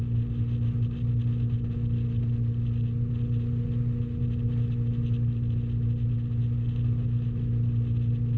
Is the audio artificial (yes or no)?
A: no